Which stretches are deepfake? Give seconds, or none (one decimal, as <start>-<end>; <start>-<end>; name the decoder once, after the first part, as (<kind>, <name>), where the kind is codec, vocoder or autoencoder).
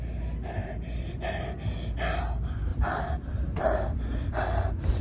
0.6-1.4 (vocoder, BigVGAN v2); 2.7-4.3